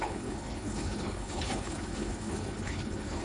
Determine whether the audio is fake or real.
fake